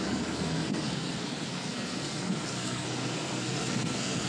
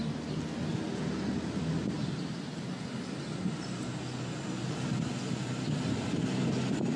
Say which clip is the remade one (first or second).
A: first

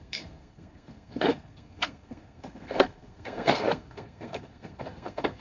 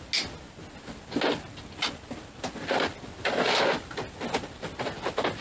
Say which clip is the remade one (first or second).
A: first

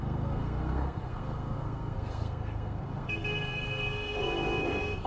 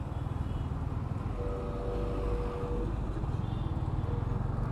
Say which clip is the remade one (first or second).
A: first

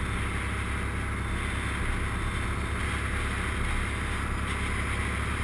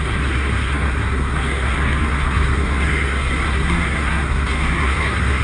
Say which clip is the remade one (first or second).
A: second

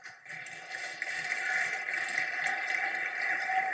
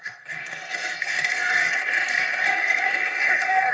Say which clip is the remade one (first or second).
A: second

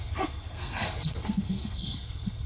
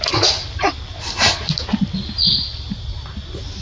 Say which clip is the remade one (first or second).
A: first